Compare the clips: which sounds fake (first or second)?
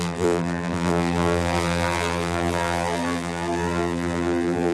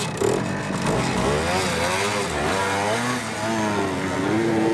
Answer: first